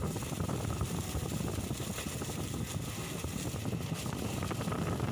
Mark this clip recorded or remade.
recorded